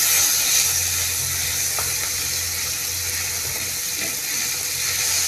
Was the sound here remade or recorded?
recorded